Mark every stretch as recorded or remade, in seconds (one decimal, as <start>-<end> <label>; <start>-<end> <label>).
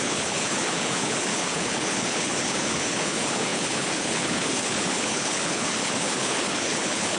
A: 0.0-7.2 remade